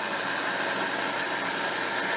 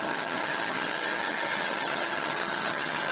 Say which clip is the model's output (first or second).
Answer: second